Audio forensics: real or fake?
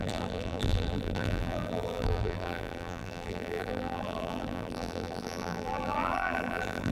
fake